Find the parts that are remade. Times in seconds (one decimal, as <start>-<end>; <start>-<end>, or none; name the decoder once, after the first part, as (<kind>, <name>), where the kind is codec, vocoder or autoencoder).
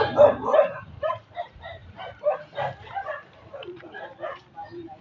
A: 0.0-1.8 (vocoder, BigVGAN v2)